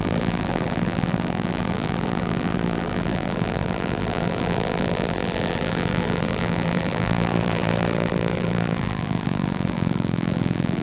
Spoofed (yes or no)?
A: yes